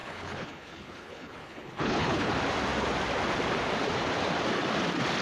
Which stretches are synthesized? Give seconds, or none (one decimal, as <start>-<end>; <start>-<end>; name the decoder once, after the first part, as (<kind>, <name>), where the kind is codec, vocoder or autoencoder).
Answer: 0.0-2.3 (codec, HILCodec)